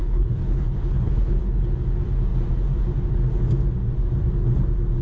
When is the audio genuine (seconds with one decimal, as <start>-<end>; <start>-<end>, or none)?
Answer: 1.4-5.0